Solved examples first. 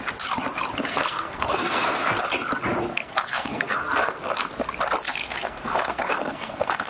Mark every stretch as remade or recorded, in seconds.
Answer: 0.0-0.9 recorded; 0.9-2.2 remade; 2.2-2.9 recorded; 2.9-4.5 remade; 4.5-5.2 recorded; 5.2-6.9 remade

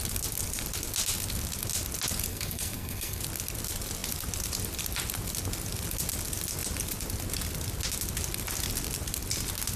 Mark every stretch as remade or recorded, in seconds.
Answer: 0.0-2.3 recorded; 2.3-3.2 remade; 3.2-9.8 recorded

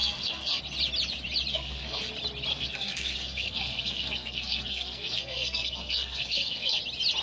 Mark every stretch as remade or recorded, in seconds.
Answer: 0.0-0.6 remade; 0.6-1.5 recorded; 1.5-2.1 remade; 2.1-2.5 recorded; 2.5-6.8 remade; 6.8-7.2 recorded

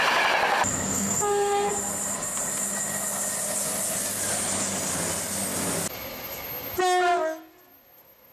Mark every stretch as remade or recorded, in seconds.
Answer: 0.0-0.9 recorded; 0.9-1.7 remade; 1.7-8.3 recorded

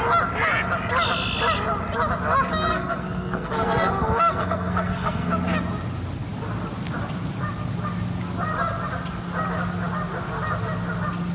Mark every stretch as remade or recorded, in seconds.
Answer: 0.0-2.7 recorded; 2.7-5.3 remade; 5.3-11.3 recorded

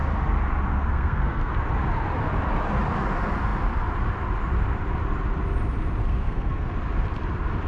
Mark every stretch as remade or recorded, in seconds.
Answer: 0.0-0.7 recorded; 0.7-1.5 remade; 1.5-6.0 recorded; 6.0-6.7 remade; 6.7-7.7 recorded